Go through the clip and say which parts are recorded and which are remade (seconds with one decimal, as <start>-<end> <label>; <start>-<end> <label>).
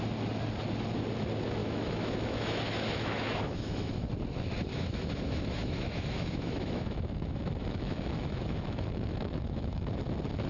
0.0-1.6 recorded; 1.6-4.0 remade; 4.0-4.7 recorded; 4.7-9.9 remade; 9.9-10.5 recorded